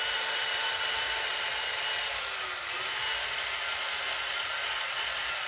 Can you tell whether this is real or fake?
real